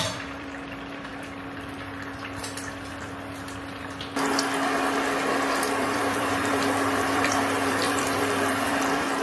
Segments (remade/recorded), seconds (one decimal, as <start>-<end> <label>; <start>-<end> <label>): 0.0-1.1 remade; 1.1-5.8 recorded; 5.8-9.2 remade